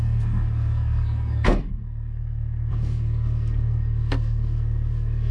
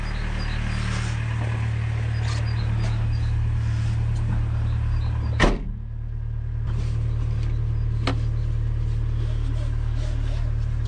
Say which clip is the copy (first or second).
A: first